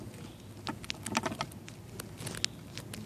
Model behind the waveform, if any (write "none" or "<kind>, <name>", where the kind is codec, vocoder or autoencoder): none